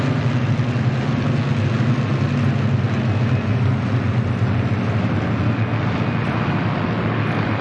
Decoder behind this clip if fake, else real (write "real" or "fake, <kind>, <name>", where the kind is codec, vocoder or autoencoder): real